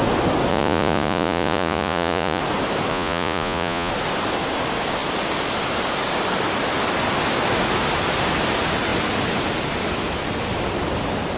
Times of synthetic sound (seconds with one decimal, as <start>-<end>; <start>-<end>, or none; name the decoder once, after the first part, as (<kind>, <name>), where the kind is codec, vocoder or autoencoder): 0.5-2.4 (vocoder, Vocos); 2.9-3.9